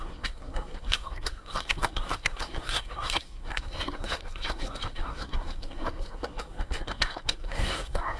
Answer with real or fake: fake